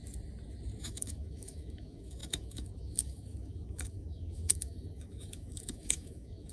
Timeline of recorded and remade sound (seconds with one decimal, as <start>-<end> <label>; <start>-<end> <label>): 0.0-0.8 recorded; 0.8-6.5 remade